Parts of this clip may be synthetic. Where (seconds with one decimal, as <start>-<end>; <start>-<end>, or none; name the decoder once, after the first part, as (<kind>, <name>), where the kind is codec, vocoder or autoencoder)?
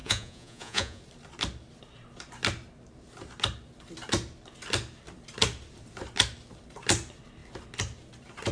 0.0-1.0 (vocoder, Vocos)